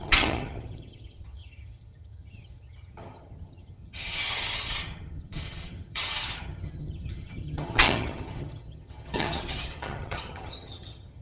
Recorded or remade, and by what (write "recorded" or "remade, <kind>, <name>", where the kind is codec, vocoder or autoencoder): remade, vocoder, HiFi-GAN